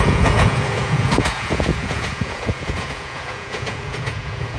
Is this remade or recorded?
remade